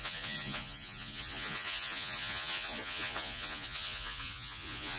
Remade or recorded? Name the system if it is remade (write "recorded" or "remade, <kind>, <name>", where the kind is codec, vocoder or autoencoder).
remade, vocoder, Vocos